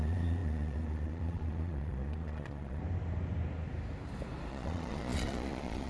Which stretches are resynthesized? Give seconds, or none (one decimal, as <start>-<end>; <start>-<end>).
0.0-2.8; 4.5-5.9